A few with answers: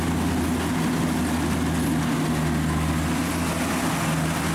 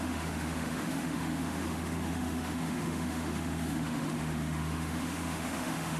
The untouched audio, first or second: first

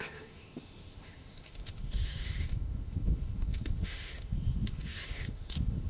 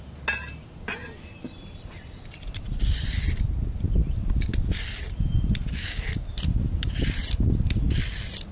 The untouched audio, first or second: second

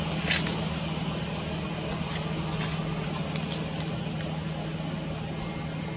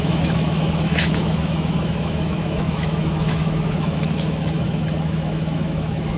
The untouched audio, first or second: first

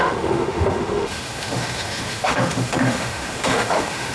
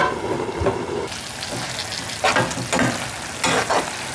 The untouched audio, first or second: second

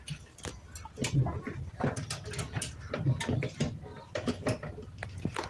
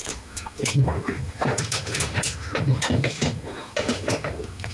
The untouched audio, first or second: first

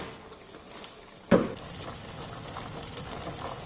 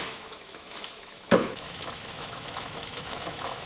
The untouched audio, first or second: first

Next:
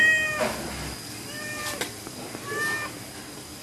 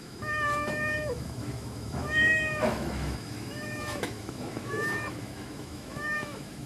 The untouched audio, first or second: first